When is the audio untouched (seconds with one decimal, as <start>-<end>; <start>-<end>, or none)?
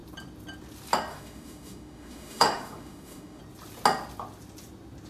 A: 0.0-1.1; 3.4-5.1